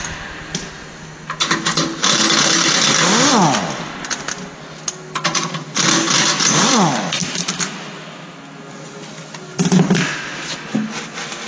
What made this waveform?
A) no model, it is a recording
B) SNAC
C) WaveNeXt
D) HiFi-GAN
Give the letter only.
A